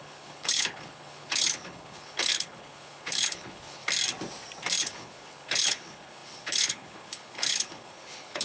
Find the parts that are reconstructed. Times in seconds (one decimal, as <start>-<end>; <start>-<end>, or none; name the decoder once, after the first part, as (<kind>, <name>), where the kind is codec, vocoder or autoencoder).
0.0-3.8 (codec, HILCodec); 4.8-8.4